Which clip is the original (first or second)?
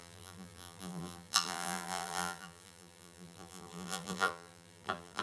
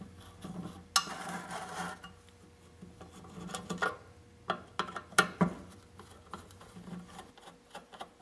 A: second